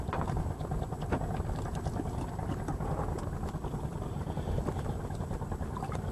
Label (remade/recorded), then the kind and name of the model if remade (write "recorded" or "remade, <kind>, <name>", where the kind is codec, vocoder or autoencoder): recorded